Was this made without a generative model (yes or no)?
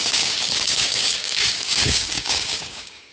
no